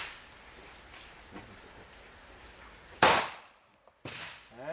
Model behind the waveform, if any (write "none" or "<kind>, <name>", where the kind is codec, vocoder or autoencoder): none